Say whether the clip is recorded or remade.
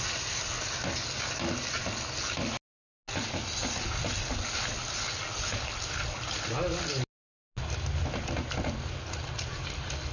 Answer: recorded